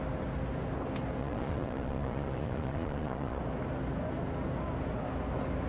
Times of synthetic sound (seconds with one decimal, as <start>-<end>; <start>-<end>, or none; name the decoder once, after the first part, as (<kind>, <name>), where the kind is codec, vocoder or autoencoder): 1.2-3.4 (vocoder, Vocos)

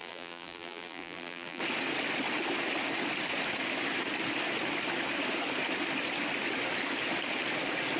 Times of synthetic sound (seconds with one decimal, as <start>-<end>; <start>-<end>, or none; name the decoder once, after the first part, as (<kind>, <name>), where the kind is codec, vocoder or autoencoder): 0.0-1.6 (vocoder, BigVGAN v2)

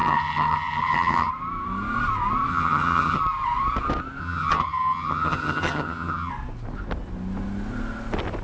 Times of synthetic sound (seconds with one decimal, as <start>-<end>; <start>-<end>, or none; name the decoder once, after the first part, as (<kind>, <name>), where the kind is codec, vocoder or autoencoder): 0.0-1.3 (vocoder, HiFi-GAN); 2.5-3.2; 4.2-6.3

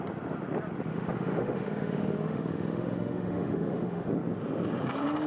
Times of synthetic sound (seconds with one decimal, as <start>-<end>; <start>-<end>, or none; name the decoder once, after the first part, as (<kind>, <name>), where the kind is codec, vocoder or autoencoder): 0.9-4.1 (autoencoder, DAC-VAE)

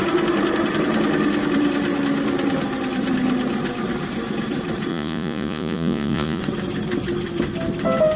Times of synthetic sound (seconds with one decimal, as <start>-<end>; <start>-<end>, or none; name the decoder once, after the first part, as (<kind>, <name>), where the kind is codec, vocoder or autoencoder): 4.9-6.4 (vocoder, Vocos)

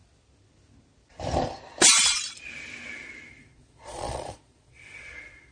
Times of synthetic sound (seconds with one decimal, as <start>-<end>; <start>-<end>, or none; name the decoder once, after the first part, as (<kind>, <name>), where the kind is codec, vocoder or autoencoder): 3.3-5.5 (vocoder, Vocos)